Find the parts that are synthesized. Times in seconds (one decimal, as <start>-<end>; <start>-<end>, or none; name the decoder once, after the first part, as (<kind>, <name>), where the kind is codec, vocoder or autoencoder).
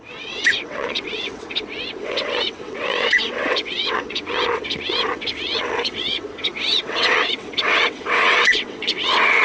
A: 0.0-9.4 (vocoder, WaveNeXt)